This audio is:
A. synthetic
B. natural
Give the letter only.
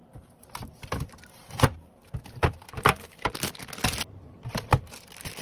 B